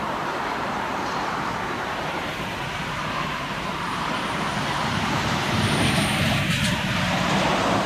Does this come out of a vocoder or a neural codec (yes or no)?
yes